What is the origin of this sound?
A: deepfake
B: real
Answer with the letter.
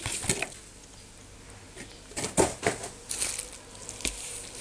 B